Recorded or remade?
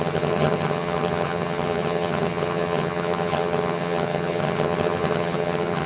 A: remade